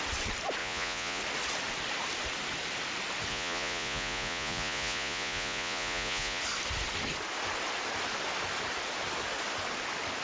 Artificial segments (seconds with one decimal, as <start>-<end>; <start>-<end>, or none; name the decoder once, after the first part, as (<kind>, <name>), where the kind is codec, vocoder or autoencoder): 0.6-1.2 (vocoder, Vocos); 3.3-6.4